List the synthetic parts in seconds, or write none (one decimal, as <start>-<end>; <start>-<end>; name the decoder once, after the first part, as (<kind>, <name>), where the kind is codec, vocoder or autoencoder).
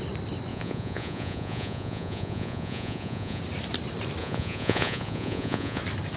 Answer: 0.5-3.4 (vocoder, Vocos); 4.2-5.8